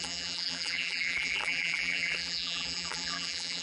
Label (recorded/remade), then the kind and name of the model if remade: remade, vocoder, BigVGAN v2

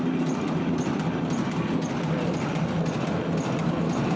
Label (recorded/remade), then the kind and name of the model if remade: recorded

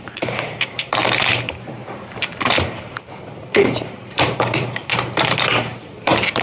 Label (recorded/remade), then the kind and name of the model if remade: remade, vocoder, BigVGAN v2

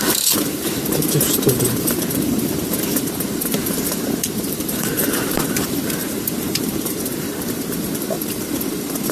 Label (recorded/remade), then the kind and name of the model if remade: remade, vocoder, BigVGAN v2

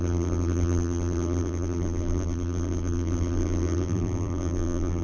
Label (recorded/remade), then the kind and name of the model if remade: remade, vocoder, BigVGAN v2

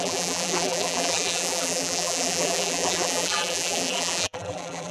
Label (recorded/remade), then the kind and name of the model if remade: remade, vocoder, BigVGAN v2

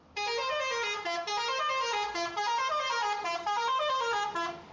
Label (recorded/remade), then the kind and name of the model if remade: recorded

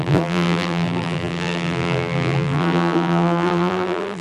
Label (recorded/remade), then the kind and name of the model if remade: remade, vocoder, BigVGAN v2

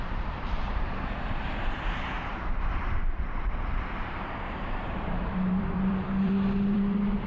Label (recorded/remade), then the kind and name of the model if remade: remade, vocoder, BigVGAN v2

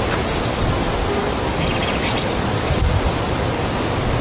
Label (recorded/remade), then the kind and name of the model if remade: recorded